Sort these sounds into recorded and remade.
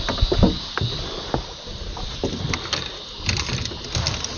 recorded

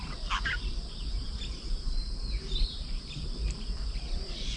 remade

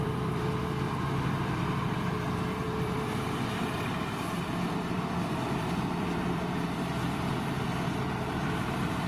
remade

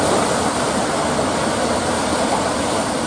remade